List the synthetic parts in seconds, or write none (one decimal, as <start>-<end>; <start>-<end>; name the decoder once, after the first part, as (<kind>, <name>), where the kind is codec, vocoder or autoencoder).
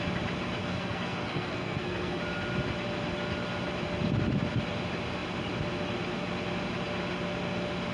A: 0.6-2.2 (codec, SNAC)